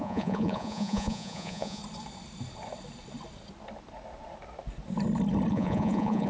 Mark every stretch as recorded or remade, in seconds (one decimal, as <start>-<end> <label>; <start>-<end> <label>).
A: 0.0-1.8 remade; 1.8-5.5 recorded; 5.5-6.3 remade